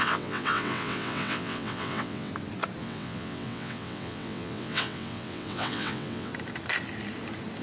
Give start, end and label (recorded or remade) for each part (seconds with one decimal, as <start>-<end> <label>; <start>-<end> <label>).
0.0-2.3 remade; 2.3-2.8 recorded; 2.8-6.3 remade; 6.3-7.6 recorded